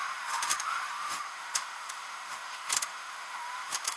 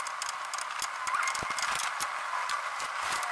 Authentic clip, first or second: second